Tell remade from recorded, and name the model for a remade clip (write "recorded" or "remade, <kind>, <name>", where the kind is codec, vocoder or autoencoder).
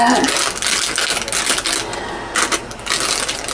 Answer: recorded